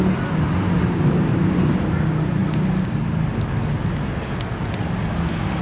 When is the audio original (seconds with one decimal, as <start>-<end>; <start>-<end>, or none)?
0.0-5.6